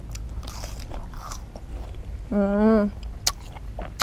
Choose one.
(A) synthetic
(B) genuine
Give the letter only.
B